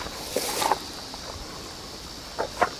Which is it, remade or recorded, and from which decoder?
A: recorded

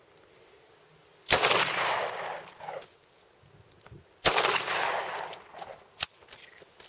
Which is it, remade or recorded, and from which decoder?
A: recorded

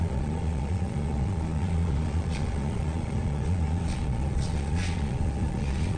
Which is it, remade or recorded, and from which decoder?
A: remade, vocoder, Vocos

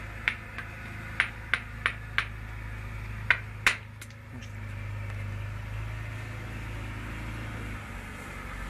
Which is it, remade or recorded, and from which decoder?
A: recorded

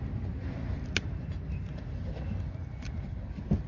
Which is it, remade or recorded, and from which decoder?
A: recorded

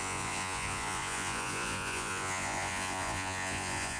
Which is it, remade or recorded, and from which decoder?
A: remade, vocoder, Vocos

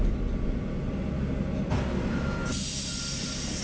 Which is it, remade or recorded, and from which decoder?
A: recorded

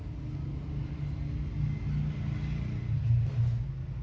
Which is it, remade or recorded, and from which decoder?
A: recorded